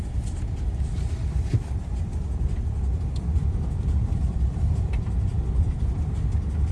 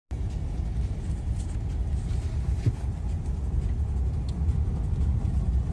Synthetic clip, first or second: first